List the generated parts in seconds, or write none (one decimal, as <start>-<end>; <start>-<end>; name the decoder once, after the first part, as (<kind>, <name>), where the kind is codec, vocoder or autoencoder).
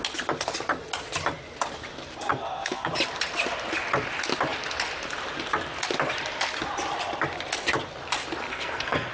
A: 2.3-2.9 (codec, SNAC); 8.5-9.1